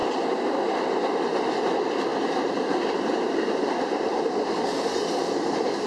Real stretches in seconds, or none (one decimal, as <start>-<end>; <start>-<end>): 1.6-2.1

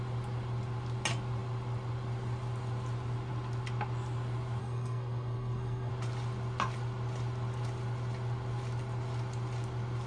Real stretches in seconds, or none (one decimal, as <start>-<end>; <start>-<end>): 0.0-4.6; 5.9-10.1

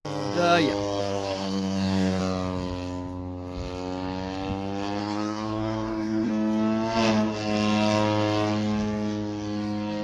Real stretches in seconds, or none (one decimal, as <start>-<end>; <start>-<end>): 0.0-1.0; 2.2-5.0; 6.3-10.0

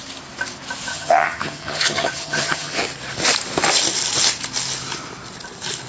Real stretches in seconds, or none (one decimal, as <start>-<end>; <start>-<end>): 0.0-0.9; 2.8-5.9

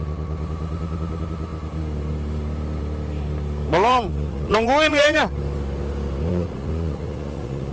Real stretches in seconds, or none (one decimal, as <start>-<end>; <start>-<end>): 0.0-3.9; 5.2-6.3

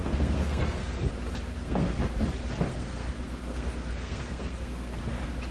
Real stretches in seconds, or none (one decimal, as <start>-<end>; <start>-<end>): 1.1-1.5; 2.0-2.7; 5.0-5.5

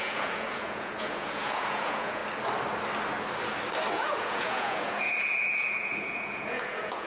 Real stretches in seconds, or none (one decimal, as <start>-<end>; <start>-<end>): 2.2-3.9